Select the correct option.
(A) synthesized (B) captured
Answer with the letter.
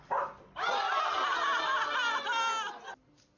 B